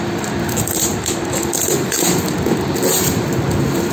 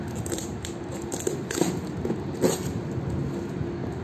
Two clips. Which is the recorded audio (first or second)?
second